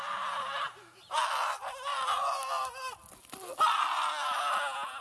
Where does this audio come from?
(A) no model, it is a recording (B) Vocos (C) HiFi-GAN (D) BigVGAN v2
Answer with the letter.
A